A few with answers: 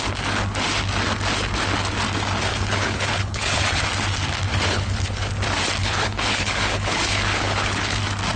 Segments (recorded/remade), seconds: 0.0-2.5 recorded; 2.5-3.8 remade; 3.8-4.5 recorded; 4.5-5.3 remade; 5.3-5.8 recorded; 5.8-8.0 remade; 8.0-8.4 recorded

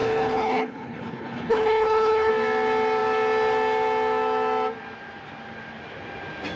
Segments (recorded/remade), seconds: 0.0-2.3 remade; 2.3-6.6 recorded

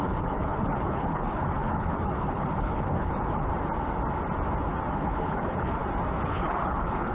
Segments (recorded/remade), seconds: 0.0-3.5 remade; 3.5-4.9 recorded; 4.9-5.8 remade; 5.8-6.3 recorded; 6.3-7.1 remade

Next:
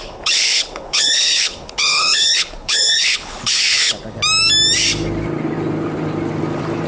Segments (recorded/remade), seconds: 0.0-4.0 remade; 4.0-6.9 recorded